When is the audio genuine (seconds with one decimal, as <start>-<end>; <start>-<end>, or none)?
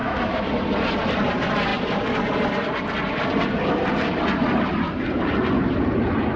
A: 0.5-6.4